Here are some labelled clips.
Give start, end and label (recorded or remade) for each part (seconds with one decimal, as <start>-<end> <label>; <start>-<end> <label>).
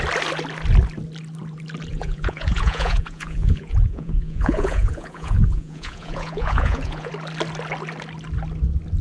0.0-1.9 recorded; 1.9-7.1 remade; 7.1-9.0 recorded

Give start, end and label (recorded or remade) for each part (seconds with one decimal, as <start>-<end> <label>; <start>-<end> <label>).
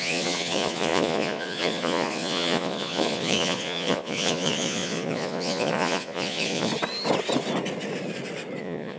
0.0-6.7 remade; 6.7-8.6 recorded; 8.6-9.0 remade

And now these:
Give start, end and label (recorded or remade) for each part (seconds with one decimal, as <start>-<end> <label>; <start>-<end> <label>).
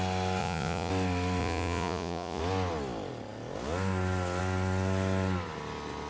0.0-0.4 recorded; 0.4-0.9 remade; 0.9-1.4 recorded; 1.4-2.4 remade; 2.4-6.1 recorded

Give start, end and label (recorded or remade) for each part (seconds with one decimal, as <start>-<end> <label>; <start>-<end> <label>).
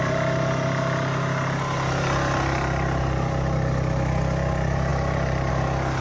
0.0-6.0 recorded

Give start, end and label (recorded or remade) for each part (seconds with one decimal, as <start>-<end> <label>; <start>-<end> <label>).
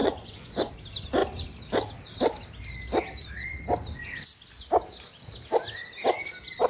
0.0-0.7 remade; 0.7-6.7 recorded